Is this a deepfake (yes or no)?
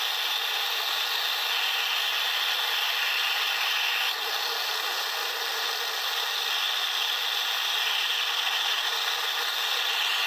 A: no